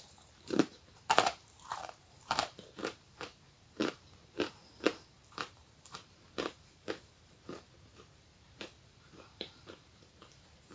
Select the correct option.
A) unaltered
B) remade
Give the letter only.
B